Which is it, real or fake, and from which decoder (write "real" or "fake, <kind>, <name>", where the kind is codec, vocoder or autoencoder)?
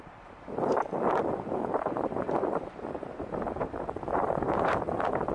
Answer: fake, vocoder, BigVGAN v2